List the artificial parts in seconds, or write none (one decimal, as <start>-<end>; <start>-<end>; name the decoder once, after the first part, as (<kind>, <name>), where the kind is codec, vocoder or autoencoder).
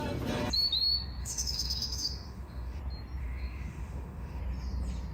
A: 1.2-2.8 (autoencoder, DAC-VAE); 3.2-4.4